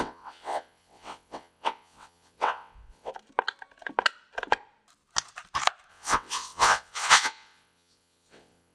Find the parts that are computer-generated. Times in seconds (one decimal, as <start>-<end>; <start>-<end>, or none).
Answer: 0.0-3.1; 5.9-8.7

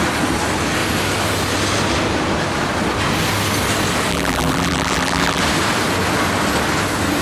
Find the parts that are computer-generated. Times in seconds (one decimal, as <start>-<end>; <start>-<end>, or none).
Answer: 4.1-5.4

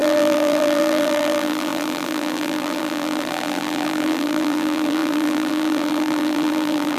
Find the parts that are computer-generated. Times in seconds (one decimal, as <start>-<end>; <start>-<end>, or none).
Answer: 0.0-7.0

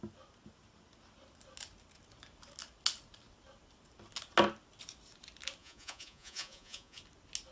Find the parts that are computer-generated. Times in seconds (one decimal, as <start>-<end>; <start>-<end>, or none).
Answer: 5.6-7.0

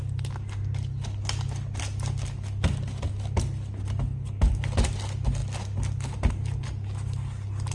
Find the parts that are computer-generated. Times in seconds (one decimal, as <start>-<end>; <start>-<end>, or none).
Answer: none

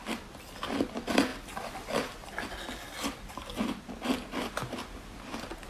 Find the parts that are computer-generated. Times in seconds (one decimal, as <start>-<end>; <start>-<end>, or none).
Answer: none

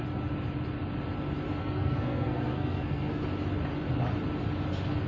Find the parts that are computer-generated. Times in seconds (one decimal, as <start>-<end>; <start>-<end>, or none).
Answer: 1.6-3.2

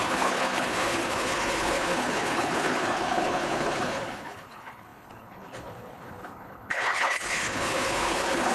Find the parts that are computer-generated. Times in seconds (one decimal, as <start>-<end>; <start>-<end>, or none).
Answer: 0.0-8.5